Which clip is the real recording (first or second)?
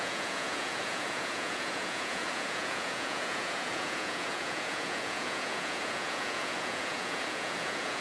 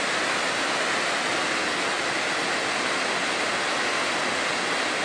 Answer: second